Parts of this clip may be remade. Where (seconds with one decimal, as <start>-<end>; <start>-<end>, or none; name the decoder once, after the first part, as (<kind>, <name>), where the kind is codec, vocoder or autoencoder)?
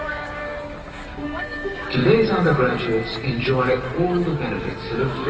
0.0-0.4 (codec, DAC); 0.9-2.0; 4.6-5.3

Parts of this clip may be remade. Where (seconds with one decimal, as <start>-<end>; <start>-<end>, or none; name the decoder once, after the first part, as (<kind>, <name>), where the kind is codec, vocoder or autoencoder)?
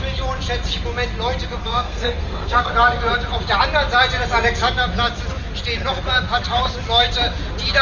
1.6-2.7 (codec, SNAC)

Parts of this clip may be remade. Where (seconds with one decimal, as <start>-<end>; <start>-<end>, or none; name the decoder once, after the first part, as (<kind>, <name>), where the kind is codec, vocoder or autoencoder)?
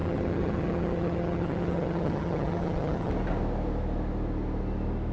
0.0-3.1 (vocoder, HiFi-GAN)